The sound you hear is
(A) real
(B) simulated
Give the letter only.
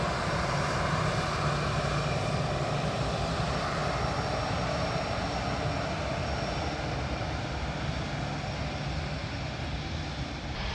A